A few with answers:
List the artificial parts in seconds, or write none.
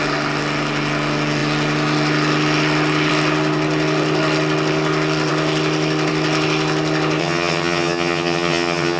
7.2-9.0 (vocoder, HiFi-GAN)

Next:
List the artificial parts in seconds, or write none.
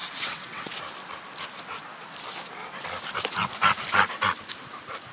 0.0-0.7 (vocoder, WaveNeXt)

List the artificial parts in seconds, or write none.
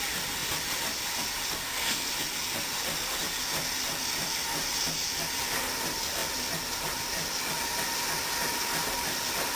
1.6-2.1 (codec, SNAC)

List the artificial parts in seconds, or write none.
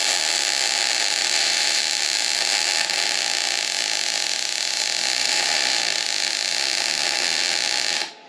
1.2-1.8 (vocoder, BigVGAN v2); 5.2-6.0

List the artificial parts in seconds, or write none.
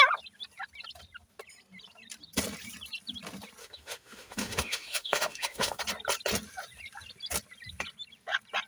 3.6-5.8 (autoencoder, DAC-VAE)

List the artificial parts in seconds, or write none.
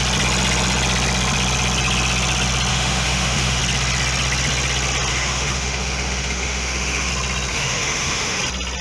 2.7-3.6 (autoencoder, DAC-VAE); 5.1-7.1; 7.5-8.4